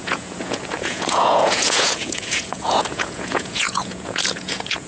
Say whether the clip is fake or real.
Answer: fake